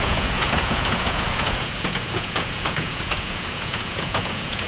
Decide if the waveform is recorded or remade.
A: remade